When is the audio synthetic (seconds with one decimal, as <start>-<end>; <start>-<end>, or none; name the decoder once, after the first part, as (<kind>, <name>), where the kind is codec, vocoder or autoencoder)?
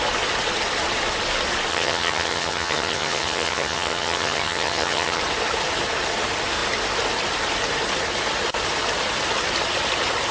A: 1.7-5.2 (vocoder, HiFi-GAN)